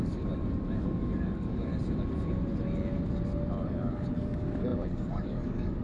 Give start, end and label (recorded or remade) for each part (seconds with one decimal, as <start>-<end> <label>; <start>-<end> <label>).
0.0-1.7 remade; 1.7-3.7 recorded; 3.7-5.8 remade